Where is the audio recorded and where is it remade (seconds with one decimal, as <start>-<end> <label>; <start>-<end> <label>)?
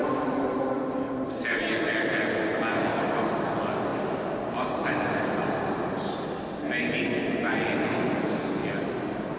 0.0-1.9 remade; 1.9-9.4 recorded